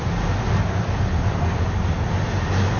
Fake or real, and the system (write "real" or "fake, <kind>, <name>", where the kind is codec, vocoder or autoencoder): real